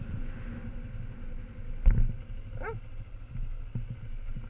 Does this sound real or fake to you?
real